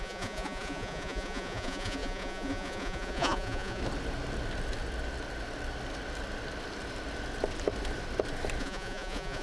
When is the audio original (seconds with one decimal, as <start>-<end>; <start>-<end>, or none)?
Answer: 3.8-8.6